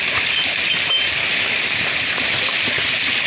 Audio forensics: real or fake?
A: real